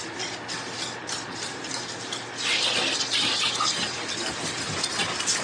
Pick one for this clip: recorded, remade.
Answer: recorded